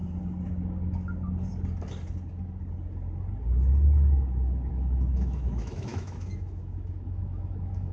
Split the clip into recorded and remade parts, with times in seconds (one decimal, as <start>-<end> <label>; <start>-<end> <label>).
0.0-4.7 recorded; 4.7-7.9 remade